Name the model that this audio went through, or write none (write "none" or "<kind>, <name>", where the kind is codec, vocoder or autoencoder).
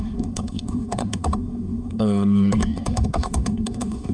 codec, SNAC